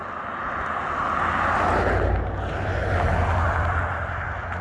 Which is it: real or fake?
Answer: real